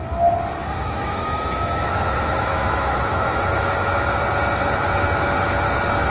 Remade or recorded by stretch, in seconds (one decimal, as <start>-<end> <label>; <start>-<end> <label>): 0.0-0.6 recorded; 0.6-4.2 remade; 4.2-6.1 recorded